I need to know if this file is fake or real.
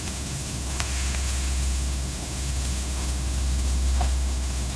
fake